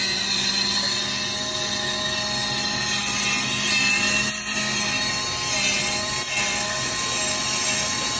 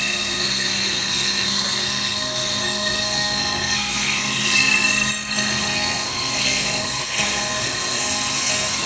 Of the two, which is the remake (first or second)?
second